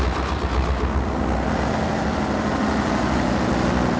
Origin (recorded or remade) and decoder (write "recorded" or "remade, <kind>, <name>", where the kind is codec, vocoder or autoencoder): recorded